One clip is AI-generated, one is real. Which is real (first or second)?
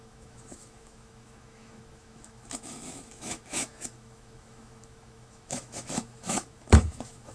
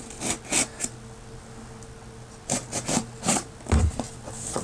second